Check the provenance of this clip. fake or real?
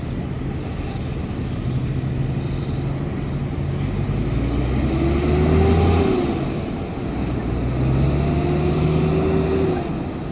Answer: real